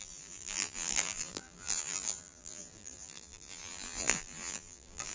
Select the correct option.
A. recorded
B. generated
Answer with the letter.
B